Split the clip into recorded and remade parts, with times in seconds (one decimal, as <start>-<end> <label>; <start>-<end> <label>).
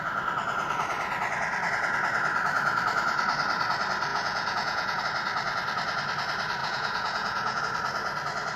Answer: 0.0-4.1 recorded; 4.1-5.0 remade; 5.0-6.6 recorded; 6.6-7.6 remade; 7.6-8.6 recorded